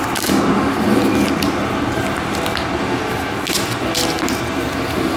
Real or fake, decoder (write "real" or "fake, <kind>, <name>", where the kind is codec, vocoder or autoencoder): real